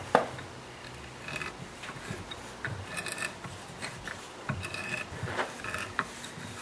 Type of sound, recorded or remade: recorded